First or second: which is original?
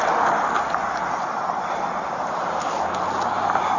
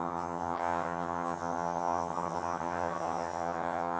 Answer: first